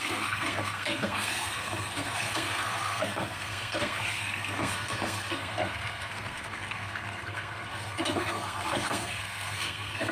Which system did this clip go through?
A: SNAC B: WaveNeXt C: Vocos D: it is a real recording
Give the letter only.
A